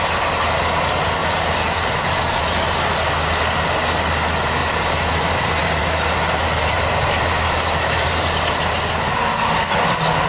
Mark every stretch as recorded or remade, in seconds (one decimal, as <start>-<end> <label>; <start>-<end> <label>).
0.0-1.2 recorded; 1.2-2.4 remade; 2.4-4.6 recorded; 4.6-8.4 remade; 8.4-10.3 recorded